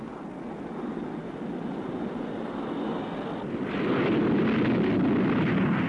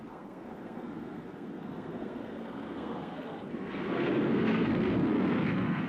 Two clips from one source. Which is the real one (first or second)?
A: first